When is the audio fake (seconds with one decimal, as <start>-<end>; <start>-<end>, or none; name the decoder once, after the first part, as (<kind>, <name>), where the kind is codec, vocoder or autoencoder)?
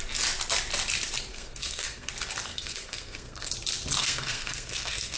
1.3-2.1 (codec, SNAC); 2.5-3.5; 4.0-5.2